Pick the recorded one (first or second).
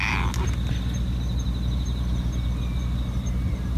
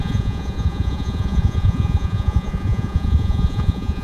first